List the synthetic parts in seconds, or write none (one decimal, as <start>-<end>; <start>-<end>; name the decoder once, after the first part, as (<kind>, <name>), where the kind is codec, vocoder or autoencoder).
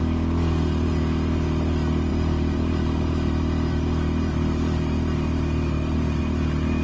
2.1-6.2 (vocoder, BigVGAN v2)